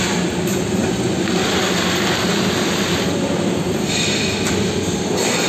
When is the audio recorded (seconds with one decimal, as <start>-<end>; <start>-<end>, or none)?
none

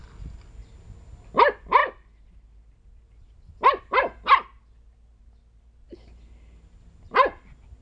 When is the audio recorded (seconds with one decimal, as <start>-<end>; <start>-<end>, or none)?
0.0-7.8